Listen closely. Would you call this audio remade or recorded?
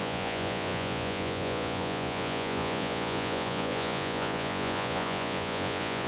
remade